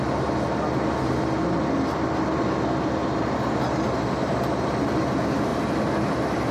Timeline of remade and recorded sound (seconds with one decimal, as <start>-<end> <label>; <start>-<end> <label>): 0.0-6.5 recorded